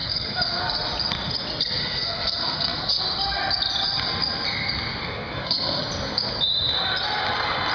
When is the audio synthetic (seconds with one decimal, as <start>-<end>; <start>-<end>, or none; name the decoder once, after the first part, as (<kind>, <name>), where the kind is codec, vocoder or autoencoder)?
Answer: 0.0-0.6 (codec, SNAC); 1.8-3.0; 5.0-5.8